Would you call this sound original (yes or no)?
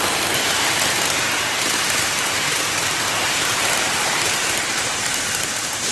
no